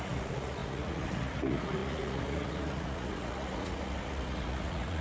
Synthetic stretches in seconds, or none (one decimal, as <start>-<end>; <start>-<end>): 0.0-5.0